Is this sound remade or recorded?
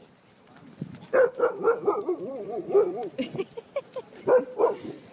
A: recorded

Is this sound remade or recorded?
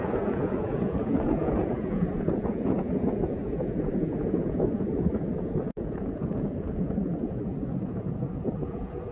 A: remade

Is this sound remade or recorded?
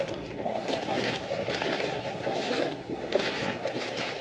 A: remade